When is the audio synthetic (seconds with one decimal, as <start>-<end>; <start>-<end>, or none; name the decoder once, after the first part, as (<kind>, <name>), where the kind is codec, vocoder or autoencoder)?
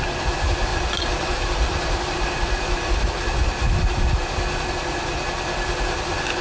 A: 0.7-3.0 (vocoder, BigVGAN v2)